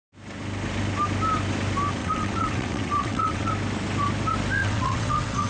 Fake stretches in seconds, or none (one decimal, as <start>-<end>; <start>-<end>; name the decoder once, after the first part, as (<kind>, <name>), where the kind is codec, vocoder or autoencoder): 2.0-3.5 (vocoder, WaveNeXt); 4.6-5.5